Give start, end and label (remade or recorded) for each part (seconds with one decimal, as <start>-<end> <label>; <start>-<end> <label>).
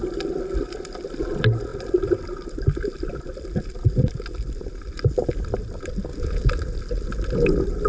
0.0-7.9 recorded